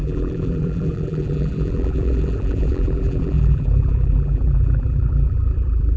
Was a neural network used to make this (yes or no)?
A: yes